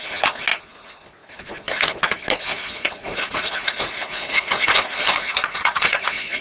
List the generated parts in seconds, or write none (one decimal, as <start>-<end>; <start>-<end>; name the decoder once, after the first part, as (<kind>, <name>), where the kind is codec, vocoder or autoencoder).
2.5-6.4 (vocoder, Vocos)